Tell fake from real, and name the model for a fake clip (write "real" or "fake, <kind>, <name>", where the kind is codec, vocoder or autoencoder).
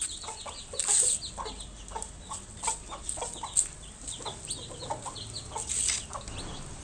real